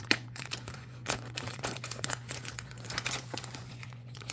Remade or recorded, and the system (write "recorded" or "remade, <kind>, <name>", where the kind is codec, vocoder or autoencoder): remade, vocoder, Vocos